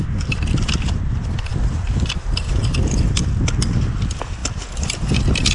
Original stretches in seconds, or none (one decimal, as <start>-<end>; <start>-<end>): 0.0-5.5